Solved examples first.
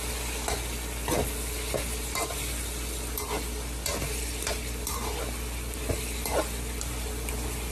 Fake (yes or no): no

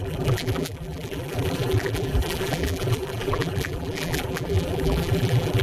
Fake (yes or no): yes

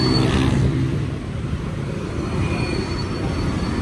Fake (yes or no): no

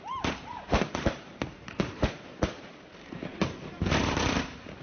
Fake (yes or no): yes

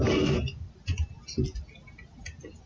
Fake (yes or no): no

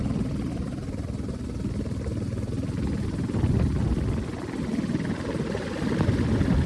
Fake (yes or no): no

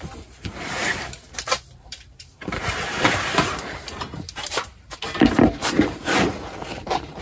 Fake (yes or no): yes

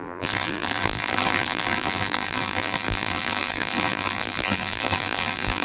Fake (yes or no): yes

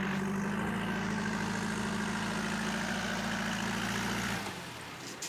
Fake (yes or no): no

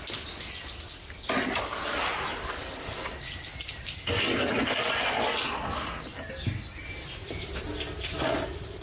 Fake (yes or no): no